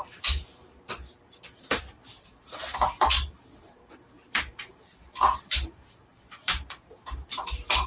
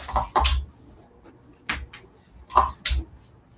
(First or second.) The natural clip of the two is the second